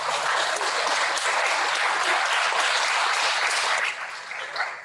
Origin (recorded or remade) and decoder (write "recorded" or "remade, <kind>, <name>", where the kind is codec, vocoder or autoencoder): recorded